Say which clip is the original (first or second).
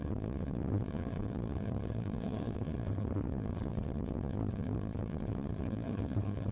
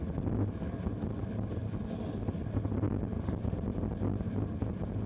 second